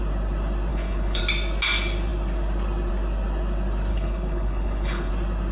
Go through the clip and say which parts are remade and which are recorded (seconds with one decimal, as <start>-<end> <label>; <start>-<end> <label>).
0.0-0.7 recorded; 0.7-1.2 remade; 1.2-3.9 recorded; 3.9-5.1 remade; 5.1-5.5 recorded